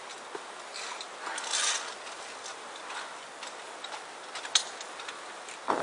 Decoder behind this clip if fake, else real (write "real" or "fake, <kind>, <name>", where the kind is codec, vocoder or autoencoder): real